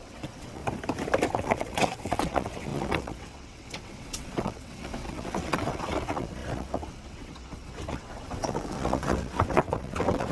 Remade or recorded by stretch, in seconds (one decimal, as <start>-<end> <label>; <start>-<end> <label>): 0.0-0.6 remade; 0.6-1.3 recorded; 1.3-10.3 remade